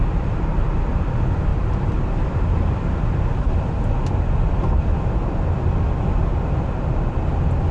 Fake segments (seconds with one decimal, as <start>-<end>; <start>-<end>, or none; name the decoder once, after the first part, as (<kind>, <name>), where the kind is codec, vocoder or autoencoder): 1.5-2.0 (vocoder, BigVGAN v2)